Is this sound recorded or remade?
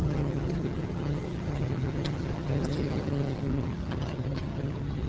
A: remade